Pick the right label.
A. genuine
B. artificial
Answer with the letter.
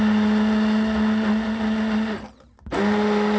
A